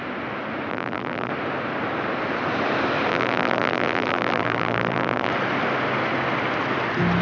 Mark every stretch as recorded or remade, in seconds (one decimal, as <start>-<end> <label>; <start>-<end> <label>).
0.0-0.7 recorded; 0.7-1.3 remade; 1.3-3.1 recorded; 3.1-5.3 remade; 5.3-7.2 recorded